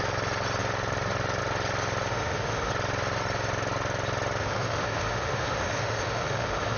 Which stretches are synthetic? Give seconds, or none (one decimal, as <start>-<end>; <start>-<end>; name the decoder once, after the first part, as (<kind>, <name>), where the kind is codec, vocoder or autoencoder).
2.1-2.7 (autoencoder, DAC-VAE); 4.4-6.8

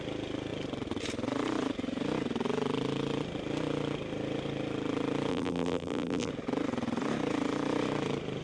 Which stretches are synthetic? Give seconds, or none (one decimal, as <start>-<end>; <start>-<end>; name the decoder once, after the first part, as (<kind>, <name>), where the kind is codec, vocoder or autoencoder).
5.3-6.3 (vocoder, BigVGAN v2)

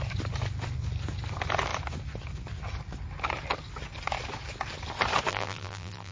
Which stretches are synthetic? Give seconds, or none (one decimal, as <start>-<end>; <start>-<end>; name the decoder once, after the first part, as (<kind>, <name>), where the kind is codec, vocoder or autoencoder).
5.3-6.1 (vocoder, BigVGAN v2)

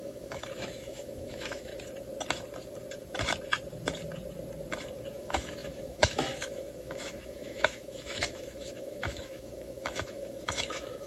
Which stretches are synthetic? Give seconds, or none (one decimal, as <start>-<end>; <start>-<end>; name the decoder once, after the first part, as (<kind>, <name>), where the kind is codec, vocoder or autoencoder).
0.0-1.7 (autoencoder, DAC-VAE); 5.1-11.1

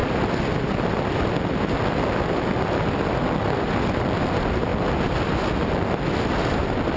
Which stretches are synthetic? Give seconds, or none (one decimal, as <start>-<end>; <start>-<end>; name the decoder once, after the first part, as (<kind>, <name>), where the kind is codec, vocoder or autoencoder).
none

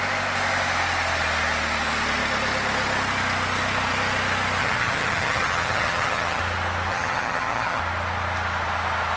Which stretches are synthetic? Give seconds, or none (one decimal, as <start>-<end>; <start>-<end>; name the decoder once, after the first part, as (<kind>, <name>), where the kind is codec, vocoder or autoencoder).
4.6-6.4 (vocoder, HiFi-GAN); 6.9-7.8